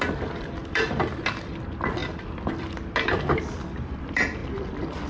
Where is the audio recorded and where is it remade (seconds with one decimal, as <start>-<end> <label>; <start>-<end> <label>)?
0.0-0.6 recorded; 0.6-1.2 remade; 1.2-5.1 recorded